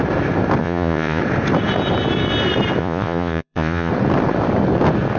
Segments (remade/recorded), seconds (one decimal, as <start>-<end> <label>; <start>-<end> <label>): 0.0-0.6 recorded; 0.6-1.2 remade; 1.2-2.8 recorded; 2.8-3.9 remade; 3.9-5.2 recorded